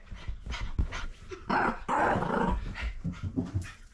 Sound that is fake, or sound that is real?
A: real